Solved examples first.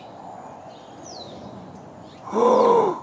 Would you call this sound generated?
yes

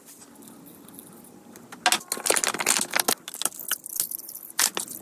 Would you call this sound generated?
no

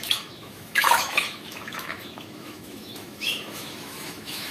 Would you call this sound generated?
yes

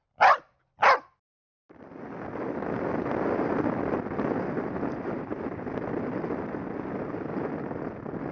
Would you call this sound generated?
no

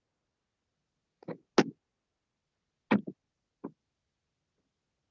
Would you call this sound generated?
no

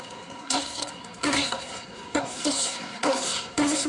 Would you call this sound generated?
yes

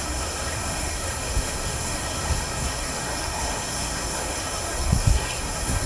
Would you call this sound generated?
yes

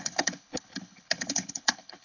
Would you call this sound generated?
yes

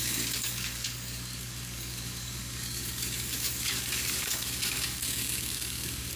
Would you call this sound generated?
yes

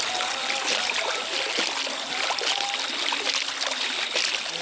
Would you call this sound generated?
no